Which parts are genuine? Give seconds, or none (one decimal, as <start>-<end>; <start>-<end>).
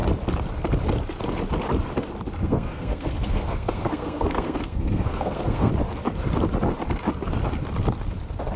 0.0-2.4; 5.7-8.6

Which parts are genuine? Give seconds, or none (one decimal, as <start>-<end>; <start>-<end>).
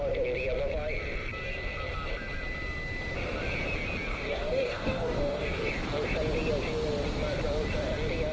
0.0-4.1; 5.7-8.3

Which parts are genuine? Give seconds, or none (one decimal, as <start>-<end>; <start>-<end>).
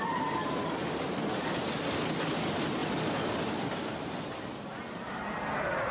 0.0-5.9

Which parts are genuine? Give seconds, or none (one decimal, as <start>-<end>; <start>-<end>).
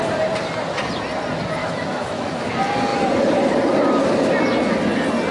0.0-1.6; 2.5-5.3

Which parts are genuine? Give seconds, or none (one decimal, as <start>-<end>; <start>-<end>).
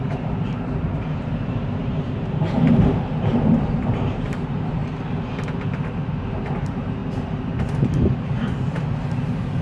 4.8-6.2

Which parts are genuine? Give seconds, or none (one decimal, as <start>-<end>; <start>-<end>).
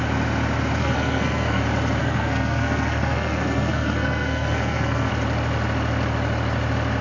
0.0-0.8; 1.6-2.0; 5.1-7.0